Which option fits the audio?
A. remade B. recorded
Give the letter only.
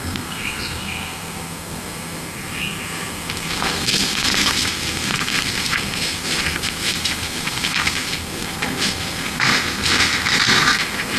A